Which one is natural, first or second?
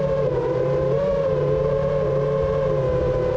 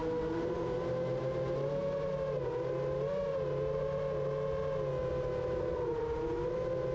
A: second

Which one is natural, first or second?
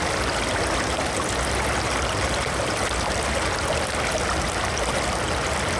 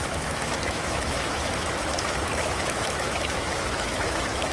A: first